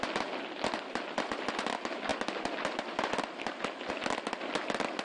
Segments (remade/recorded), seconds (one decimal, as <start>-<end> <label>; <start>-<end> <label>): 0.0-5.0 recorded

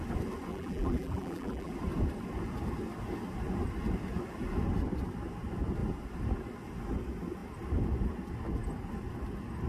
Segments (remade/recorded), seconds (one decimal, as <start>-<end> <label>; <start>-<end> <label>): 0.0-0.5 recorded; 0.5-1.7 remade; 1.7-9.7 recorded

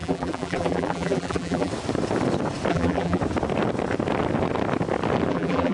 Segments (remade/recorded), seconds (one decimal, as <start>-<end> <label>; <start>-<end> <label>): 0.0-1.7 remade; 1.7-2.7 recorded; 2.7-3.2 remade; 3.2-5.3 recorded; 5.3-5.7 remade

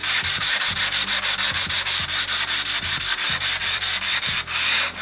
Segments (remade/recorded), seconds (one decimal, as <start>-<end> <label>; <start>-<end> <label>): 0.0-1.1 remade; 1.1-3.6 recorded; 3.6-4.1 remade; 4.1-5.0 recorded

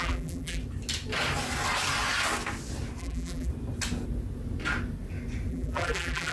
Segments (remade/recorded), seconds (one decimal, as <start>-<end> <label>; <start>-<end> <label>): 0.0-0.6 remade; 0.6-3.0 recorded; 3.0-3.5 remade; 3.5-5.5 recorded; 5.5-6.3 remade

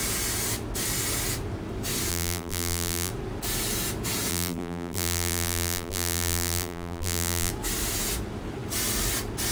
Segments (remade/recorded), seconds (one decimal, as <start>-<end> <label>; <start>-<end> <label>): 0.0-2.1 recorded; 2.1-3.1 remade; 3.1-4.3 recorded; 4.3-7.5 remade; 7.5-9.5 recorded

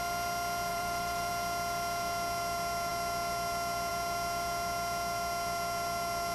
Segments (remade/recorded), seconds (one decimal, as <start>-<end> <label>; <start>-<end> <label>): 0.0-0.7 recorded; 0.7-1.3 remade; 1.3-6.3 recorded

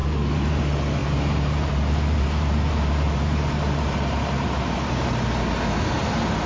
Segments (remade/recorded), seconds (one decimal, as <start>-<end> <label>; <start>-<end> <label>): 0.0-0.6 remade; 0.6-1.0 recorded; 1.0-4.9 remade; 4.9-6.5 recorded